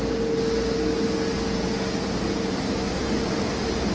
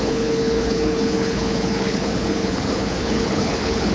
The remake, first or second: second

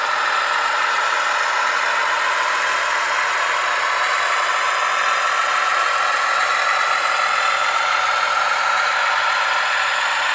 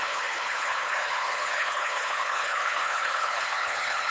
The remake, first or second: second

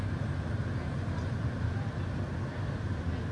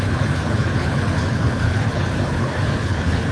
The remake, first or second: second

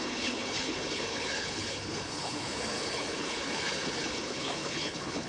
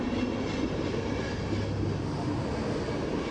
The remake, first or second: first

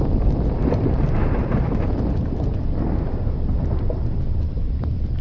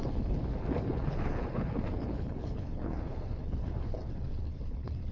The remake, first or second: second